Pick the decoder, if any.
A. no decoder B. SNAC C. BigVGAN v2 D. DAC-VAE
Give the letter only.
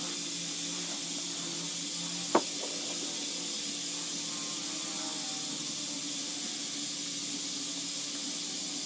A